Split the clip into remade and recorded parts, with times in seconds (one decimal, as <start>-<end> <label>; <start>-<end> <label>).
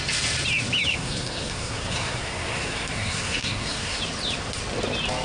0.0-0.9 recorded; 0.9-4.0 remade; 4.0-5.2 recorded